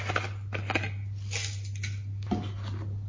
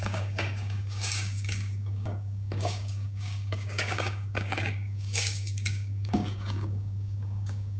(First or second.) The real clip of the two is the first